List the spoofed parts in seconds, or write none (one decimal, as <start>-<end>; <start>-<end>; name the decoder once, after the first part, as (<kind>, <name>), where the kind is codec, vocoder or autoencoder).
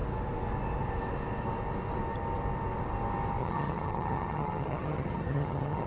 3.4-5.9 (vocoder, HiFi-GAN)